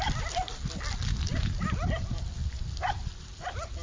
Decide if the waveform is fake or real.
real